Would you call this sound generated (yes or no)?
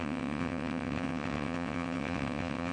yes